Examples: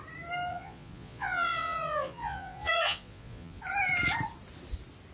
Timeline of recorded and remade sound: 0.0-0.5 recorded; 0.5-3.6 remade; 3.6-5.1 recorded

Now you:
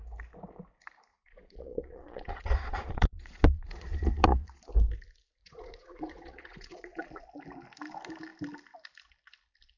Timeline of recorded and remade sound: 0.0-1.1 recorded; 1.1-4.7 remade; 4.7-5.4 recorded; 5.4-7.2 remade; 7.2-9.8 recorded

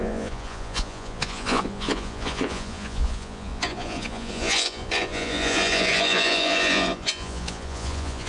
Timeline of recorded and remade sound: 0.0-8.3 remade

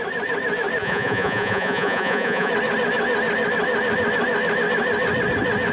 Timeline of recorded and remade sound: 0.0-0.8 recorded; 0.8-2.5 remade; 2.5-5.7 recorded

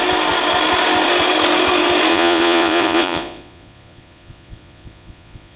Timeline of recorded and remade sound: 0.0-2.1 recorded; 2.1-5.6 remade